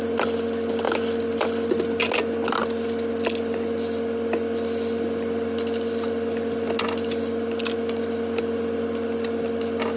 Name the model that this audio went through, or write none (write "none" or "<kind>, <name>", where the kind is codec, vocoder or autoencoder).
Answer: none